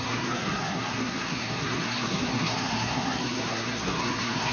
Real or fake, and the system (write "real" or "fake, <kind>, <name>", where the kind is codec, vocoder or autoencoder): fake, codec, SNAC